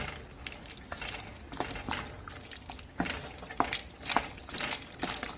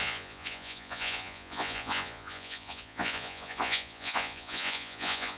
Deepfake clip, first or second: second